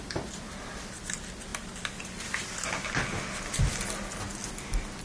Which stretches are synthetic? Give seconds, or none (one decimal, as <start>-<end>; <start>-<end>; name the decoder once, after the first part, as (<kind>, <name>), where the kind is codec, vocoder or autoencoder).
none